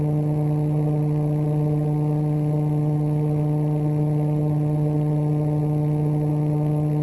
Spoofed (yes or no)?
no